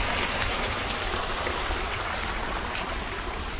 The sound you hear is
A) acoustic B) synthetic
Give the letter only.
A